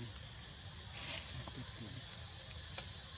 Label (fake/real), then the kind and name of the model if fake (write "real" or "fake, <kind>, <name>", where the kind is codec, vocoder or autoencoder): real